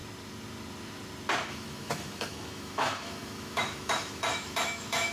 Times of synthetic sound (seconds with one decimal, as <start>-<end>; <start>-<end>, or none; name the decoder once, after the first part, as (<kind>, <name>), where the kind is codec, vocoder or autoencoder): 1.5-5.1 (autoencoder, DAC-VAE)